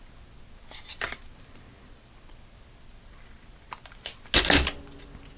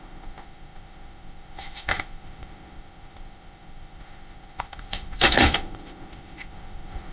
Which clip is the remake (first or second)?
second